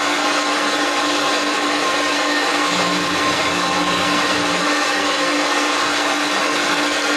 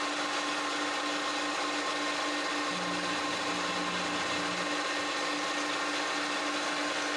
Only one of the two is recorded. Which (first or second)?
second